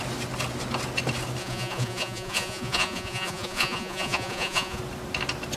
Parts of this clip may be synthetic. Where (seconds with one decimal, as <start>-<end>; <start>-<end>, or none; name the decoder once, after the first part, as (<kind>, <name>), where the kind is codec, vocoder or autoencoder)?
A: 1.4-4.8 (vocoder, Vocos)